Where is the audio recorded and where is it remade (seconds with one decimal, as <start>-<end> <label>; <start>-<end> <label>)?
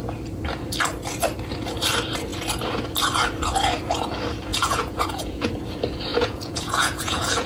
0.0-4.5 recorded; 4.5-5.5 remade; 5.5-6.1 recorded; 6.1-7.5 remade